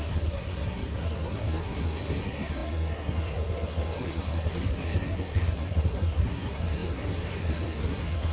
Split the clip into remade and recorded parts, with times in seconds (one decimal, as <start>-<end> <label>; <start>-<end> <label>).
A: 0.0-8.3 remade